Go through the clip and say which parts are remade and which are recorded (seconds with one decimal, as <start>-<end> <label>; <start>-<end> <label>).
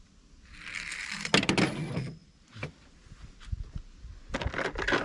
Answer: 0.0-5.0 recorded